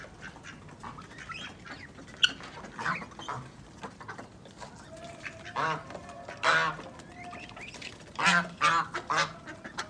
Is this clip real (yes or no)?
yes